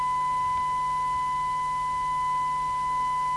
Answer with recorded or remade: recorded